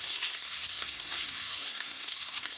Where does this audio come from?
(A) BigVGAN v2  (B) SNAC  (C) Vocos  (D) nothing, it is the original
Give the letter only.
B